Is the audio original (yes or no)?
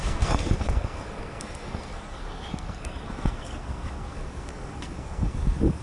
no